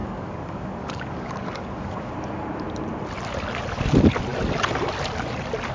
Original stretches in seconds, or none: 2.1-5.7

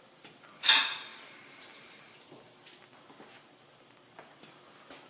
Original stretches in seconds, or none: 0.0-5.1

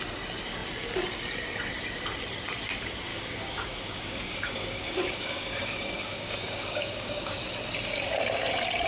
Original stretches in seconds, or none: 0.0-3.1; 7.4-8.9

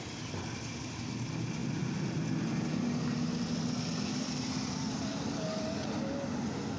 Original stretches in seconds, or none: 0.0-5.1; 5.6-6.8

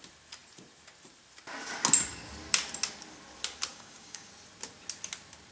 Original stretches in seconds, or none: 0.0-3.7; 4.3-5.5

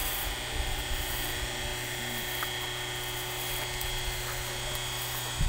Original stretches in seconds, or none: 0.0-5.5

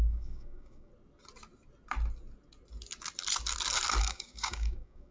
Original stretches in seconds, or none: 0.9-4.0

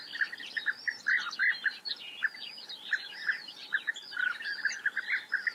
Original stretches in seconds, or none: 0.0-5.5